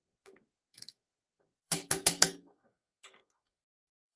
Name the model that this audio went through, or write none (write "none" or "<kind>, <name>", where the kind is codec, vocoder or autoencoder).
codec, SNAC